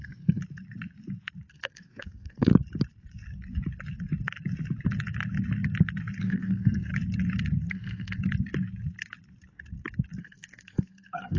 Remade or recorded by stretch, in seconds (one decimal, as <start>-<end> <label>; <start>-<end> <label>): 0.0-0.4 remade; 0.4-1.5 recorded; 1.5-2.5 remade; 2.5-6.2 recorded; 6.2-6.9 remade; 6.9-7.7 recorded; 7.7-8.2 remade; 8.2-10.2 recorded; 10.2-11.4 remade